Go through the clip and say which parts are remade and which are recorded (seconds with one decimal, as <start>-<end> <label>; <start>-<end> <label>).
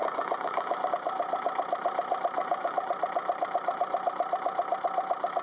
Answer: 0.0-0.9 remade; 0.9-2.4 recorded; 2.4-2.9 remade; 2.9-5.4 recorded